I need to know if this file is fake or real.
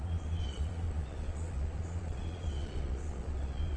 fake